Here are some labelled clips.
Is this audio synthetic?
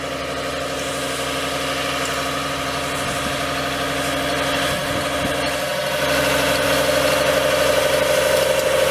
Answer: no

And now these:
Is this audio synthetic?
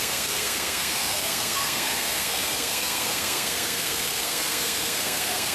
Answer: yes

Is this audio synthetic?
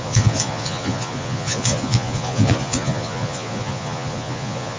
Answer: yes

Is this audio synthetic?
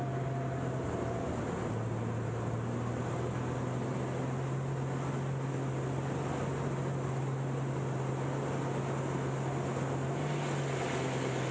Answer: no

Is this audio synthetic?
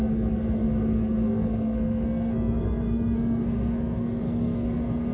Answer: yes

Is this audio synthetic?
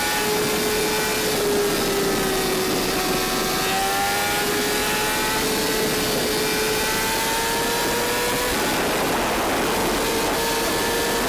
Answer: no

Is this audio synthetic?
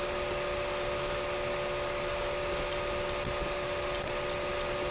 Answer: no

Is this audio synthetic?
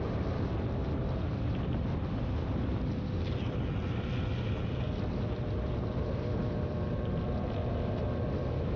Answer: no